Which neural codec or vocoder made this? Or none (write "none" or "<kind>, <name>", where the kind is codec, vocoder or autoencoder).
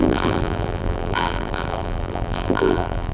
vocoder, BigVGAN v2